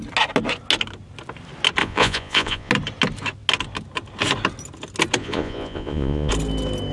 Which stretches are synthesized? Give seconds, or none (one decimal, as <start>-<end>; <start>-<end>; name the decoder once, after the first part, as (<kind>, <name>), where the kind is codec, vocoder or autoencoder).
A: 1.8-2.7 (vocoder, Vocos); 5.2-6.3